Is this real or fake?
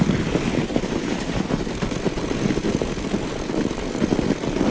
real